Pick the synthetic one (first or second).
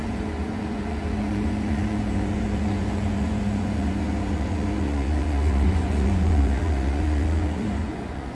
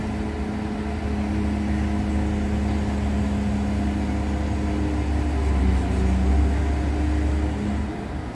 first